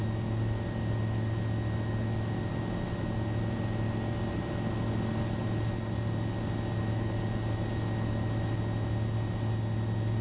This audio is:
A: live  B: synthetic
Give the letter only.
A